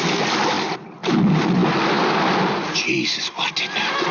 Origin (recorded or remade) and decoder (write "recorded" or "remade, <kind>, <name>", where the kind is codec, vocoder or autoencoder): recorded